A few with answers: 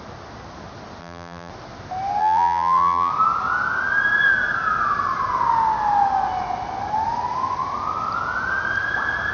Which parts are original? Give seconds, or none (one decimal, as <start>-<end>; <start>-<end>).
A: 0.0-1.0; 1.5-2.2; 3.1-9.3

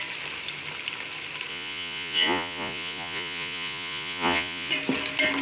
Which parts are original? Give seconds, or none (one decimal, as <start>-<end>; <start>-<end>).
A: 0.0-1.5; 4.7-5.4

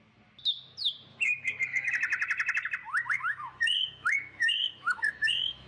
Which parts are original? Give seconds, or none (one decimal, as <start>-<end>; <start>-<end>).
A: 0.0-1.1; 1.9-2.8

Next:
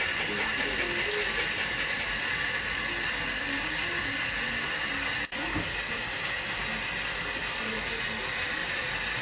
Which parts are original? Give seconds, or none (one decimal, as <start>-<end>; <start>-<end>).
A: 0.0-9.2

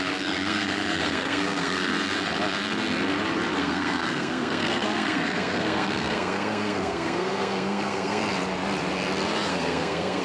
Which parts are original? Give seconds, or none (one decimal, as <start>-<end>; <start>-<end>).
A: 1.9-3.6; 8.2-9.5